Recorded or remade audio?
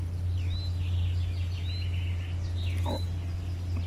recorded